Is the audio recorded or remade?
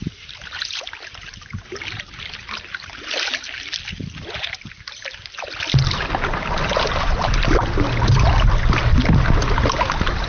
recorded